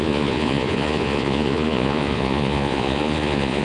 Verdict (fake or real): fake